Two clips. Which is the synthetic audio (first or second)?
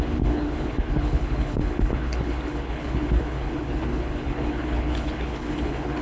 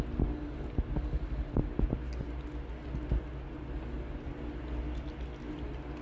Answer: first